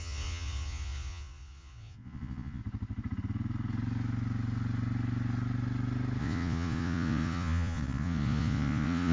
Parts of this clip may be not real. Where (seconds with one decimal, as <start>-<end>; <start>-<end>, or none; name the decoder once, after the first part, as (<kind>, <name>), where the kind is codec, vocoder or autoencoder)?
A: 0.0-2.6 (vocoder, Vocos); 6.2-9.1